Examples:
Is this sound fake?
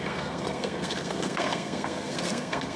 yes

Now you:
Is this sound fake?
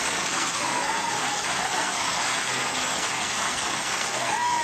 yes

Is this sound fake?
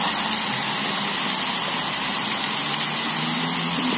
no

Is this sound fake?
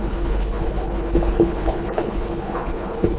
yes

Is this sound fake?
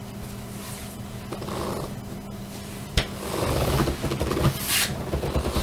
no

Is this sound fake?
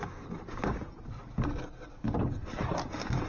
no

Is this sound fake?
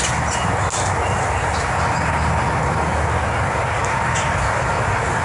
no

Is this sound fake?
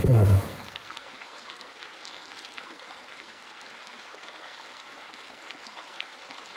yes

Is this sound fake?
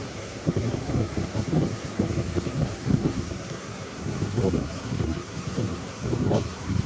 yes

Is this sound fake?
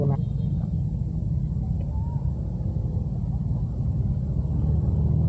no